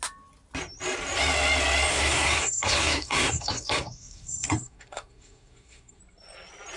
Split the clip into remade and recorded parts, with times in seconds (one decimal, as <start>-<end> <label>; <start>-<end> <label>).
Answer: 0.0-1.9 recorded; 1.9-6.0 remade; 6.0-6.8 recorded